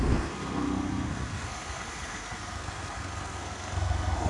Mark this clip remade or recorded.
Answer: remade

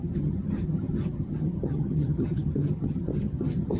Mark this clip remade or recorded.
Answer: remade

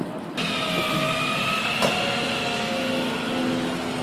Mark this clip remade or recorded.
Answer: recorded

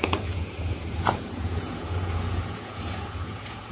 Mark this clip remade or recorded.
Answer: remade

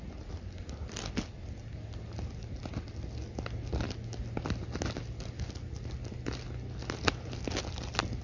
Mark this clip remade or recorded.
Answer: recorded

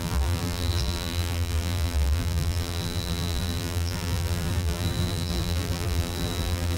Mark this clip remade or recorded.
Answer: remade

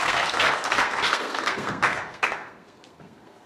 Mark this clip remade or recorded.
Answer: remade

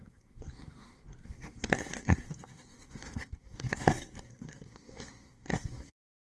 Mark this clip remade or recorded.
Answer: remade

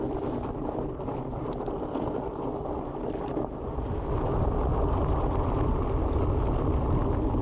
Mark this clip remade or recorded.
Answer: recorded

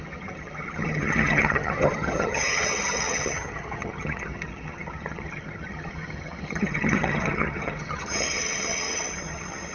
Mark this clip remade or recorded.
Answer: remade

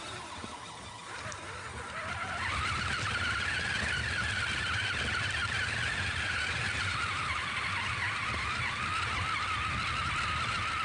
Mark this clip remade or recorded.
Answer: recorded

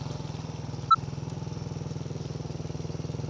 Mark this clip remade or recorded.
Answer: recorded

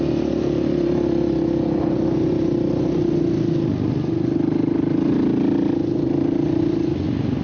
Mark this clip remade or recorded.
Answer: recorded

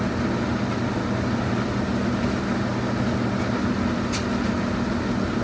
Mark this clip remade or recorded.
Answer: recorded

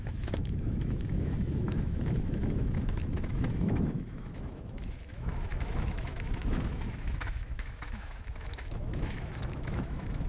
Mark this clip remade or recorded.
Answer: remade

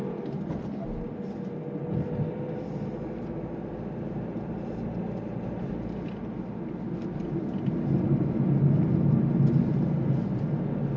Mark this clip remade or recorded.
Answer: recorded